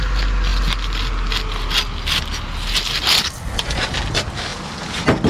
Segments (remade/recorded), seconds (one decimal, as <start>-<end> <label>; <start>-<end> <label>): 0.0-5.3 recorded